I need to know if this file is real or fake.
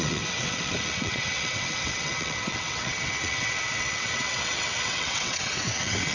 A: fake